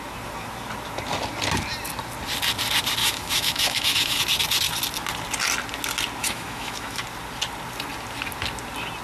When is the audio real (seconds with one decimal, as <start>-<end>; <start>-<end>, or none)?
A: 0.0-3.0; 4.2-6.2; 7.0-9.0